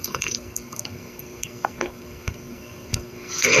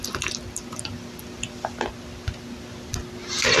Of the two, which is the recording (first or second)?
second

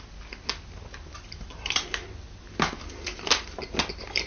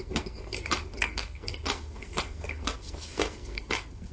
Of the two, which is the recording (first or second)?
first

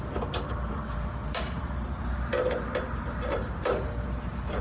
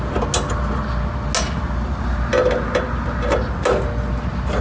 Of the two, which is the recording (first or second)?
second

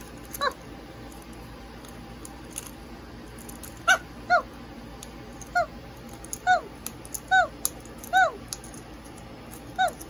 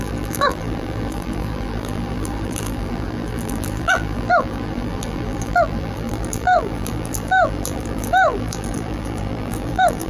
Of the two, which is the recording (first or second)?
first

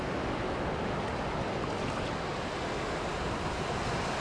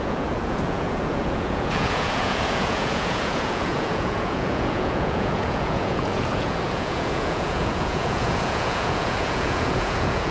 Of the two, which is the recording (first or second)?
first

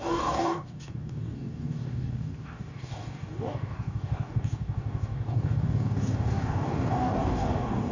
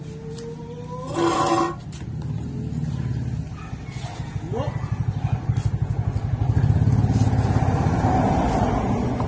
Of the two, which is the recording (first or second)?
second